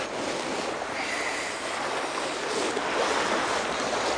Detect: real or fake real